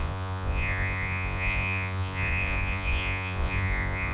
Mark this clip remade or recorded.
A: remade